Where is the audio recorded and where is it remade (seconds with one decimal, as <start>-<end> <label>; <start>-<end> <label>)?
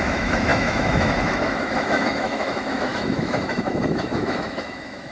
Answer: 0.0-5.1 remade